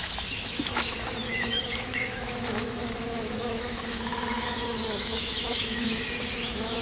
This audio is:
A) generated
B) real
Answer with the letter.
A